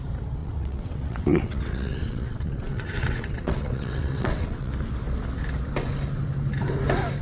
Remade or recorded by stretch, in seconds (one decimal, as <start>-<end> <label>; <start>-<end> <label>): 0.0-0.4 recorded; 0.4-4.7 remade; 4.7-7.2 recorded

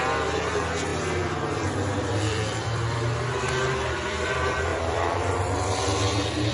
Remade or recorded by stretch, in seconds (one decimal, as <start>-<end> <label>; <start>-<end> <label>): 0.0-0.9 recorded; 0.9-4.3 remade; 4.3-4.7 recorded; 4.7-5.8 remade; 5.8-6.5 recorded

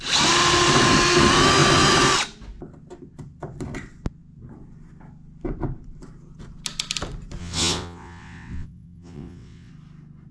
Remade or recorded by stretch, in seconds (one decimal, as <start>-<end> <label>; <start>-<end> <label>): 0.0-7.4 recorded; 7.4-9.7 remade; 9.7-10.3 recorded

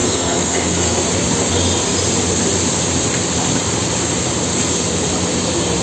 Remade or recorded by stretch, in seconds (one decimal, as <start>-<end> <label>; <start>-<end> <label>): 0.0-1.0 remade; 1.0-5.8 recorded